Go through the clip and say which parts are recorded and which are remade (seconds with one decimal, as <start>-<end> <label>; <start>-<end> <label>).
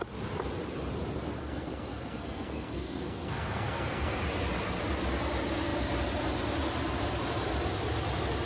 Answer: 0.0-1.4 recorded; 1.4-4.2 remade; 4.2-8.5 recorded